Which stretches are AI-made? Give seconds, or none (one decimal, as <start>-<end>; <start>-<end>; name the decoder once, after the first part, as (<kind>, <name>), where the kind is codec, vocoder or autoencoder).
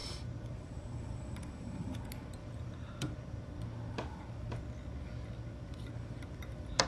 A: 0.0-2.0 (vocoder, BigVGAN v2); 2.4-3.4